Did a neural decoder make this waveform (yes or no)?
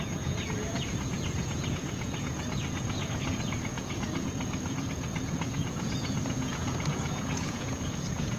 yes